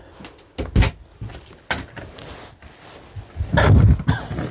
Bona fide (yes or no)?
yes